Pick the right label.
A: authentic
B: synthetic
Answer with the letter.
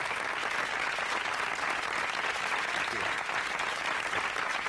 A